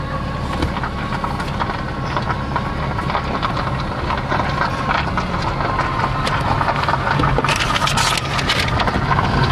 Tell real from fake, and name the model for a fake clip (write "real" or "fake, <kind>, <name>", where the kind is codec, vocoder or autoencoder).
real